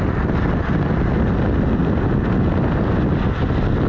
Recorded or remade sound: recorded